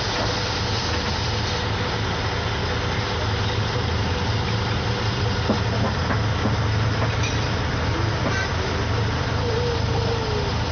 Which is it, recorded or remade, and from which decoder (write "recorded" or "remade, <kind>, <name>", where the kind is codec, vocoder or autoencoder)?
recorded